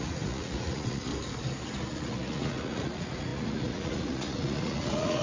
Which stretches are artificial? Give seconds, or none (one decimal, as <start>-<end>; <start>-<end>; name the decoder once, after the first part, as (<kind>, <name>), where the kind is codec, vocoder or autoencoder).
0.0-1.1 (vocoder, Vocos); 1.9-5.2